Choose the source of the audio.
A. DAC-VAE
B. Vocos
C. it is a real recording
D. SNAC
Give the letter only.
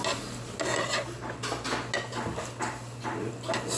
C